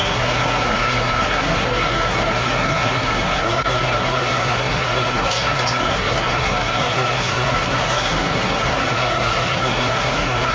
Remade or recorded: remade